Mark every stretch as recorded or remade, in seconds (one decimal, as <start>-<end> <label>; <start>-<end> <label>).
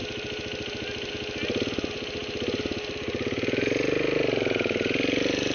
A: 0.0-5.5 recorded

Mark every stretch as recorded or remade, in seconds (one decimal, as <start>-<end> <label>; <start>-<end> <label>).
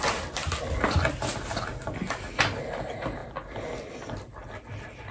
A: 0.0-5.1 recorded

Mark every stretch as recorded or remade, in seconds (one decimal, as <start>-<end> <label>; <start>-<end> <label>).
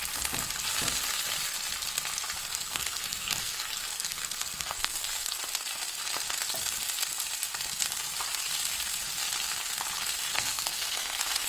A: 0.0-2.4 recorded; 2.4-5.4 remade; 5.4-10.3 recorded; 10.3-11.5 remade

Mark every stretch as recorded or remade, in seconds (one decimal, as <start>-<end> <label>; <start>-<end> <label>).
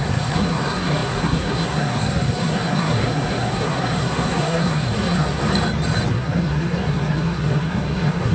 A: 0.0-5.4 remade; 5.4-6.1 recorded; 6.1-8.3 remade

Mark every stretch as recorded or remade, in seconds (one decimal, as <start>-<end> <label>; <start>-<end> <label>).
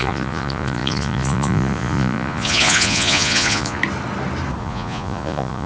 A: 0.0-3.8 remade; 3.8-4.6 recorded; 4.6-5.7 remade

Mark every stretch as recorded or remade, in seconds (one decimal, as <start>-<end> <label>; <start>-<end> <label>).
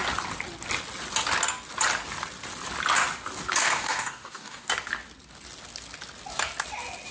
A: 0.0-3.6 recorded; 3.6-4.7 remade; 4.7-7.1 recorded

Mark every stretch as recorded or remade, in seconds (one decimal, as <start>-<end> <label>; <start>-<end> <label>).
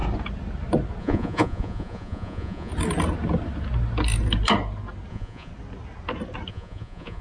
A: 0.0-1.0 recorded; 1.0-2.7 remade; 2.7-5.1 recorded; 5.1-5.5 remade; 5.5-6.5 recorded; 6.5-7.2 remade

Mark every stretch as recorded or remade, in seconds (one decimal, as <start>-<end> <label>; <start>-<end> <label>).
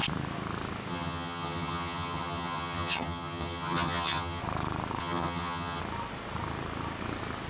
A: 0.0-0.9 recorded; 0.9-4.4 remade; 4.4-5.0 recorded; 5.0-5.8 remade; 5.8-7.5 recorded